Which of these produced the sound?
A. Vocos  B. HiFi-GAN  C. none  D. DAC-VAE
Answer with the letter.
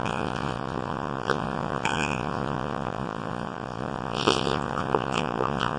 A